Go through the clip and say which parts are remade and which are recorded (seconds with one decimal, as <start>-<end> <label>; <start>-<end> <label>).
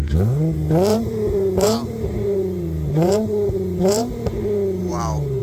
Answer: 0.0-0.9 recorded; 0.9-4.1 remade; 4.1-4.8 recorded; 4.8-5.4 remade